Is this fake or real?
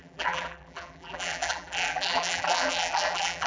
fake